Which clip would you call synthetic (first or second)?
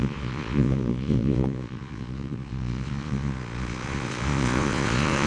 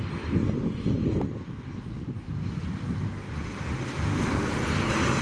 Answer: first